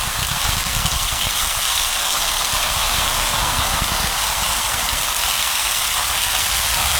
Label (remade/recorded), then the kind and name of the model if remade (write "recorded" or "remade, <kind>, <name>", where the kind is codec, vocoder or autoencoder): remade, codec, SNAC